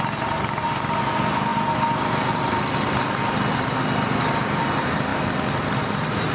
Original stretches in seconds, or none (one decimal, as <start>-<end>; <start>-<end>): 0.0-6.3